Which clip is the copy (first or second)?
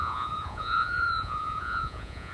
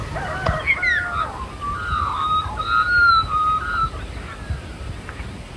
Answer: first